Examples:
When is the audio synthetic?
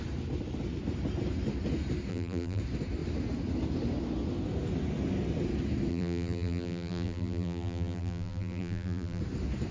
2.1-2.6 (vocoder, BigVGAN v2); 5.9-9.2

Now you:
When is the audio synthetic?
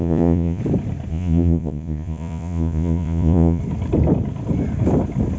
0.0-0.6 (vocoder, Vocos); 1.1-3.6